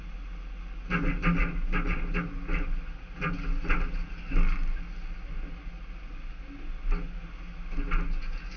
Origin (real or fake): real